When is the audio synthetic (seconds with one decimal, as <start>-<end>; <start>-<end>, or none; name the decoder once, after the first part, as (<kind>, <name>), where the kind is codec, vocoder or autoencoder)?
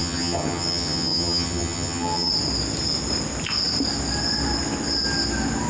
0.0-2.3 (vocoder, HiFi-GAN)